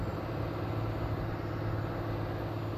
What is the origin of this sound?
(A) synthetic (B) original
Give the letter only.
B